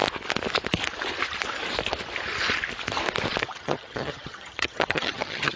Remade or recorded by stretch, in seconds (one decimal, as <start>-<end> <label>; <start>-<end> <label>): 0.0-3.4 recorded; 3.4-5.6 remade